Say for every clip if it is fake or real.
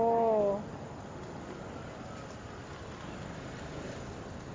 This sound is real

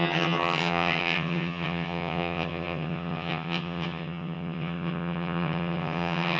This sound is fake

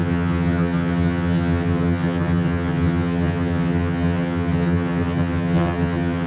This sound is fake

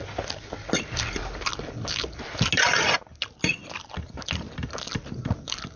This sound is real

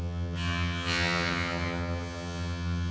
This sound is fake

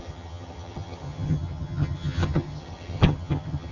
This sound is fake